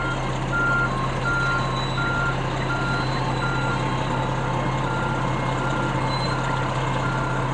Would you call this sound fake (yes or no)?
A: no